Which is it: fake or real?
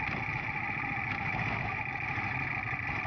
real